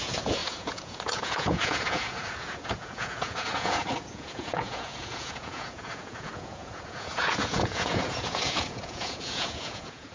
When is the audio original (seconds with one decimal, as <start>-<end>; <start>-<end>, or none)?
none